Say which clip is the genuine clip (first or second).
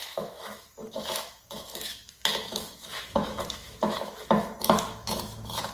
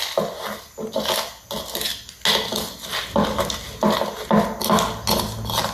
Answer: second